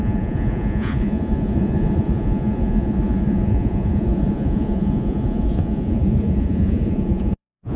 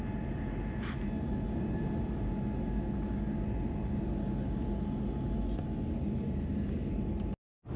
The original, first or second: second